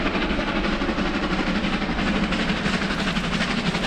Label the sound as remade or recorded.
recorded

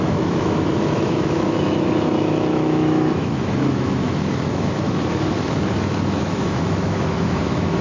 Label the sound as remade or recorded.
remade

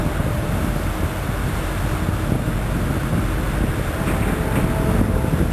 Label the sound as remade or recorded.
recorded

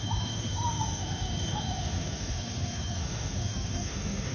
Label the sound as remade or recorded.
remade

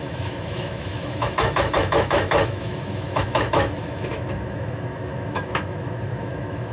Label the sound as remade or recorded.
remade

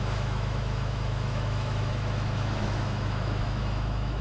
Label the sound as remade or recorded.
remade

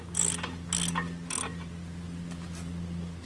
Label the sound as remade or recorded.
recorded